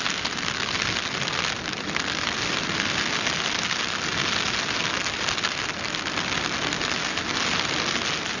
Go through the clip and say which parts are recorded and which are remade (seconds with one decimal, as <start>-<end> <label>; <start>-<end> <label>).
0.0-8.4 recorded